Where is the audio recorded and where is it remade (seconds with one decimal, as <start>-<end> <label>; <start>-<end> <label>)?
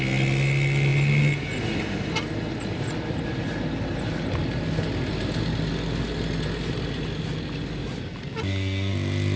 0.0-9.4 recorded